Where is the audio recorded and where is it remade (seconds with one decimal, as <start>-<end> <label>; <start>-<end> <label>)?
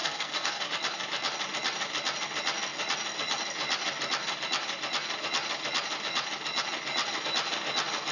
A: 0.0-0.7 remade; 0.7-8.1 recorded